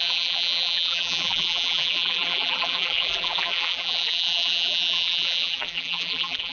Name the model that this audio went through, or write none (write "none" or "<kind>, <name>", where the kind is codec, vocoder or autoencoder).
vocoder, BigVGAN v2